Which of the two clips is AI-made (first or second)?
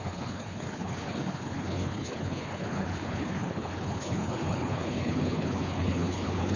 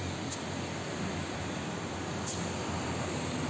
first